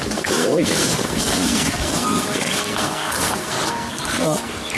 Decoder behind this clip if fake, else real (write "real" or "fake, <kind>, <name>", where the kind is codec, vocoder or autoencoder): fake, codec, SNAC